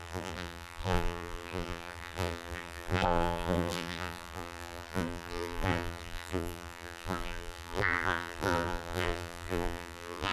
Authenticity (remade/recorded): remade